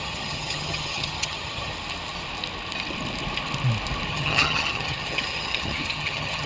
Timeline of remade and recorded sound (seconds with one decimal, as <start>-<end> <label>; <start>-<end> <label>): 0.0-1.7 remade; 1.7-4.1 recorded; 4.1-6.5 remade